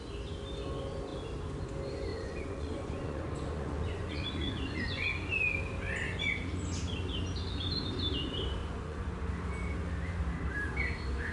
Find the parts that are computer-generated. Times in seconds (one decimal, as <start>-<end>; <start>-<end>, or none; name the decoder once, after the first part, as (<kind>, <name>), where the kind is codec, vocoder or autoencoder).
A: 2.1-5.1 (vocoder, Vocos); 8.6-9.2